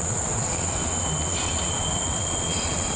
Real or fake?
fake